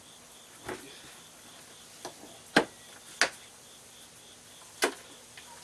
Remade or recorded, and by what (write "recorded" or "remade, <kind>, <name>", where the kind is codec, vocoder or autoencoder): recorded